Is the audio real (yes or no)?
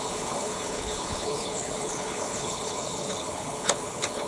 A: no